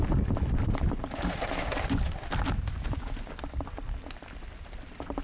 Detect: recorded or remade recorded